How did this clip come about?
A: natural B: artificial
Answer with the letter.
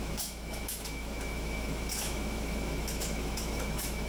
B